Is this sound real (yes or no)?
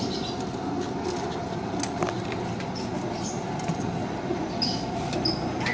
yes